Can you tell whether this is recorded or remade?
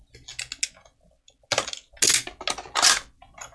recorded